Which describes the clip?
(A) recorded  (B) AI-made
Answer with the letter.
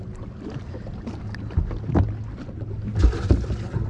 A